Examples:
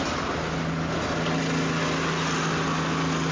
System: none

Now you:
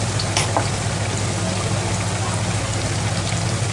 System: none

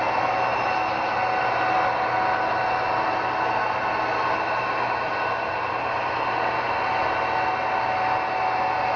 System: none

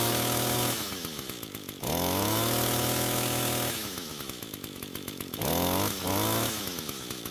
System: autoencoder, DAC-VAE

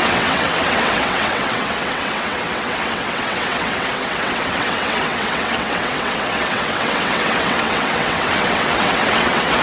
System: vocoder, WaveNeXt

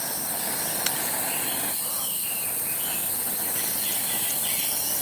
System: none